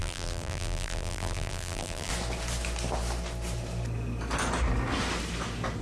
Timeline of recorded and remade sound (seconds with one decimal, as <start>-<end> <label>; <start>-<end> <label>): 0.0-2.1 remade; 2.1-5.8 recorded

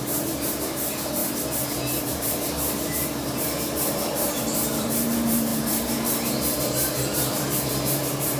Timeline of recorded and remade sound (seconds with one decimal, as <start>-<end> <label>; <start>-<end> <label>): 0.0-1.2 remade; 1.2-2.0 recorded; 2.0-8.4 remade

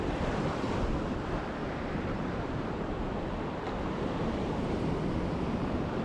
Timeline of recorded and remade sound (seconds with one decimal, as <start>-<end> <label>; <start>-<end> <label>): 0.0-1.6 recorded; 1.6-4.9 remade; 4.9-6.0 recorded

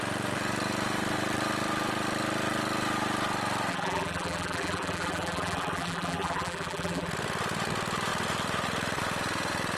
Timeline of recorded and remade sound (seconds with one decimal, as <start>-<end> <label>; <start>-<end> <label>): 0.0-3.7 recorded; 3.7-7.1 remade; 7.1-9.8 recorded

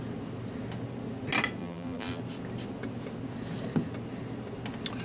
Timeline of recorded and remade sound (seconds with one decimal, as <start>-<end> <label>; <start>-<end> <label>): 0.0-1.6 recorded; 1.6-2.2 remade; 2.2-5.0 recorded